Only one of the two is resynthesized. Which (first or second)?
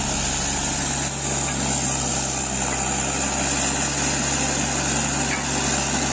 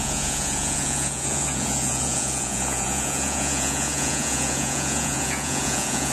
second